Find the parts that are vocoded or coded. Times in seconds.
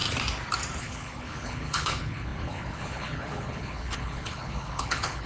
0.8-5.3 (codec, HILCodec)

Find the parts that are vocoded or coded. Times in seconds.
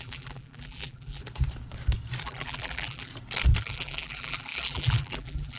0.0-1.2 (vocoder, BigVGAN v2); 2.2-3.1; 3.6-5.6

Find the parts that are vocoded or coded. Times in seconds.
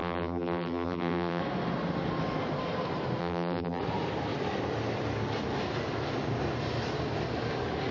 0.0-1.4 (vocoder, BigVGAN v2); 3.2-3.8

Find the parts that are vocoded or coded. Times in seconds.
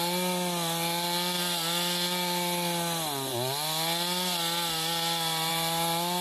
none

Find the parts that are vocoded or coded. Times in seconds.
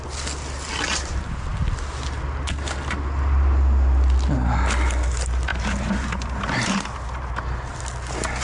0.9-1.5 (vocoder, BigVGAN v2); 5.5-7.8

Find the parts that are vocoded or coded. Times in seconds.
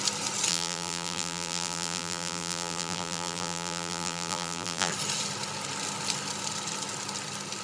0.5-4.9 (vocoder, BigVGAN v2)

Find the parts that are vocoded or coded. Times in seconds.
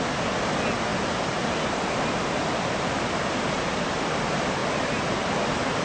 none